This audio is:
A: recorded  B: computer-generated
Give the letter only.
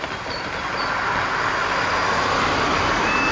A